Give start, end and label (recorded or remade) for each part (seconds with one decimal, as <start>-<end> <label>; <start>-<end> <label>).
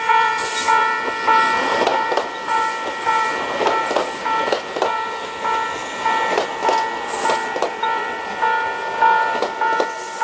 0.0-5.8 remade; 5.8-7.8 recorded; 7.8-10.2 remade